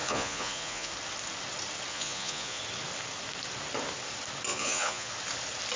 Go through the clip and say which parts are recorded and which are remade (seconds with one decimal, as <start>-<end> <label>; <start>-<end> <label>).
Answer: 0.0-0.9 remade; 0.9-1.9 recorded; 1.9-2.6 remade; 2.6-4.5 recorded; 4.5-5.1 remade; 5.1-5.8 recorded